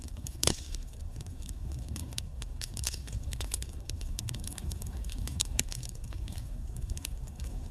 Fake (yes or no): yes